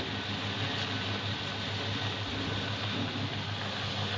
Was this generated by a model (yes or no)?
no